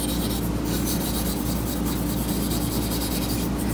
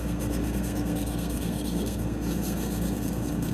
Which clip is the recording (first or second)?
first